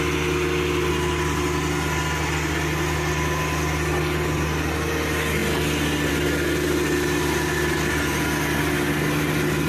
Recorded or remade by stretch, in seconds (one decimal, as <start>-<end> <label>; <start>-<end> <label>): 0.0-9.7 recorded